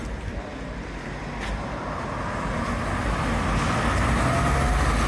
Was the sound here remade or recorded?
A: recorded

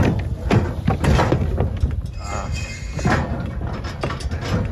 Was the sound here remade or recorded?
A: recorded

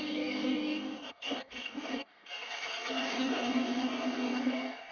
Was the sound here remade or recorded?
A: remade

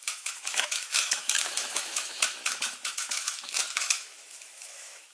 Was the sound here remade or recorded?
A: remade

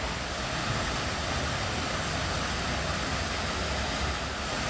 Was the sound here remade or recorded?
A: recorded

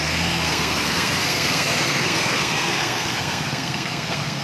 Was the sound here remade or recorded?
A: remade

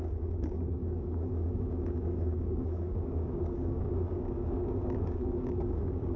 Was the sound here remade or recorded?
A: remade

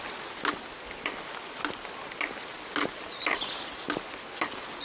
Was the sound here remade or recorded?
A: recorded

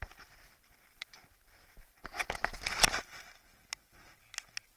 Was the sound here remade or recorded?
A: recorded